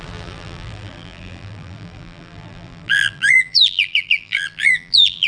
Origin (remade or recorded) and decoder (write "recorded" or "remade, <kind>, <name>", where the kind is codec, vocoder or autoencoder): remade, vocoder, BigVGAN v2